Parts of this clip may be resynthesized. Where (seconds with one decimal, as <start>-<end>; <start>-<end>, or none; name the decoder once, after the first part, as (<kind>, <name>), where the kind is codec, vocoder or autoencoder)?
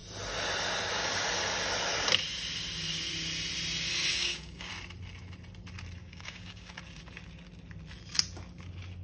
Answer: 4.1-4.7 (codec, DAC); 6.0-6.8